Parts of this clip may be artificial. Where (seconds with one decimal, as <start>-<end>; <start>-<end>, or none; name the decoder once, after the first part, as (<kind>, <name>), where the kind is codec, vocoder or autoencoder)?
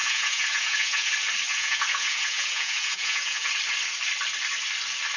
0.0-1.1 (vocoder, Vocos); 1.5-3.5